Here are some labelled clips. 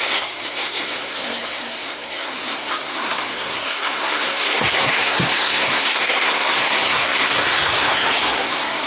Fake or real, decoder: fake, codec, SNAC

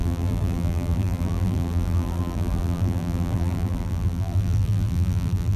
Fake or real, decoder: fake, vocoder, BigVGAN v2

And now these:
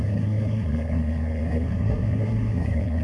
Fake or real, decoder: fake, codec, SNAC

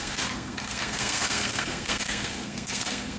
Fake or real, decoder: fake, codec, SNAC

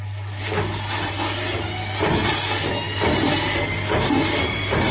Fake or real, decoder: real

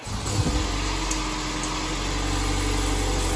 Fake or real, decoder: real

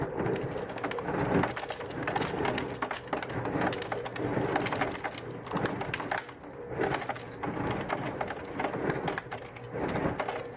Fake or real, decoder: real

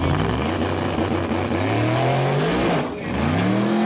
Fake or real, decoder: real